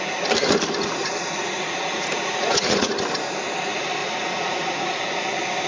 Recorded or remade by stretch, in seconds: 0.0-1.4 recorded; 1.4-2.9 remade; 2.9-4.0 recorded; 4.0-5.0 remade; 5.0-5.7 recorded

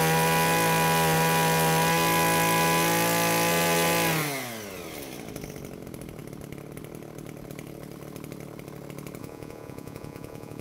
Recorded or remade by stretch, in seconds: 0.0-9.2 recorded; 9.2-10.6 remade

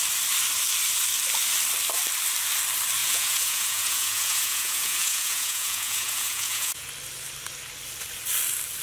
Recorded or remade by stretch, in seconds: 0.0-3.0 recorded; 3.0-6.9 remade; 6.9-8.8 recorded

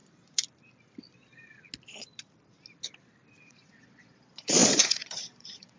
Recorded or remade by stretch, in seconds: 0.0-3.4 recorded; 3.4-5.8 remade